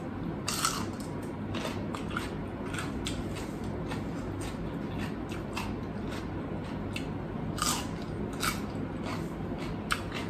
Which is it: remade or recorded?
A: recorded